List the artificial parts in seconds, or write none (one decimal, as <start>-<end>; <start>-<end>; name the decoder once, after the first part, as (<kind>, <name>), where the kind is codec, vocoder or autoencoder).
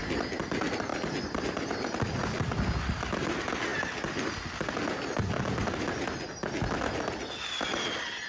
none